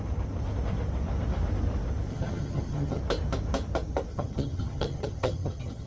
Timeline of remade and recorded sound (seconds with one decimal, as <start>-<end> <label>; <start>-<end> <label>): 0.0-2.1 recorded; 2.1-3.0 remade; 3.0-4.1 recorded; 4.1-5.9 remade